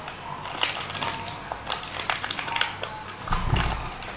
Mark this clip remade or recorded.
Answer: recorded